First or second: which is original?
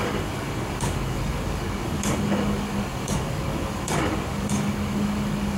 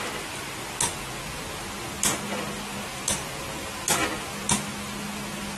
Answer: second